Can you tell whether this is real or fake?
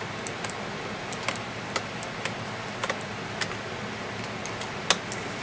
real